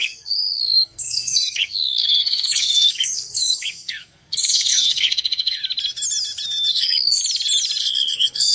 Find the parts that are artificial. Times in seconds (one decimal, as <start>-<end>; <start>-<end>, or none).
0.0-5.6; 6.7-7.2; 7.8-8.5